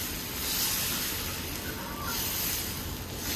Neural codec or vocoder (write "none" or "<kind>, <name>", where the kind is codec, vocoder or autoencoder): none